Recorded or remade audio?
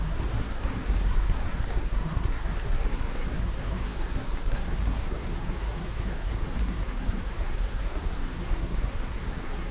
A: remade